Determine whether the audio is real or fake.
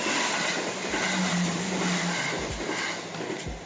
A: real